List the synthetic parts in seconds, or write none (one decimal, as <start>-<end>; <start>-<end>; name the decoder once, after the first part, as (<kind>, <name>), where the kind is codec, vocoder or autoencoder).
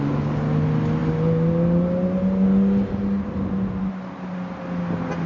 none